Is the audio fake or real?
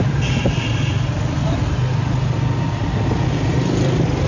real